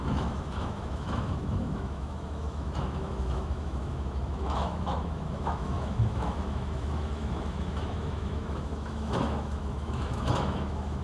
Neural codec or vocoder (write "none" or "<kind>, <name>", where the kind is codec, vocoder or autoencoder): autoencoder, DAC-VAE